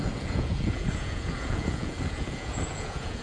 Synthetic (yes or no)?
yes